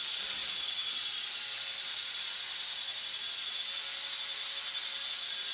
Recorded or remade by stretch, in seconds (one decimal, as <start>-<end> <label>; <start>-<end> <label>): 0.0-5.5 recorded